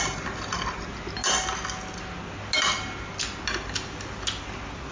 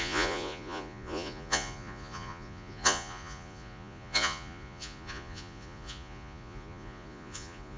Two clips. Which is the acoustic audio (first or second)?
first